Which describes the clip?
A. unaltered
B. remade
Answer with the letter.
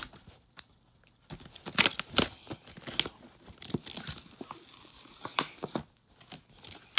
A